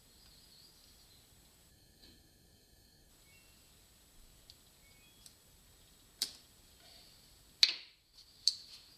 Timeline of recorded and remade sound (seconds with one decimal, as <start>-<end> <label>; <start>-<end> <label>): 0.0-1.7 recorded; 1.7-3.1 remade; 3.1-9.0 recorded